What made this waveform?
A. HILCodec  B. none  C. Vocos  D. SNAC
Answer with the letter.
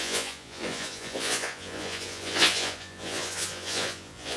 C